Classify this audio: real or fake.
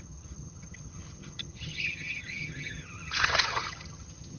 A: fake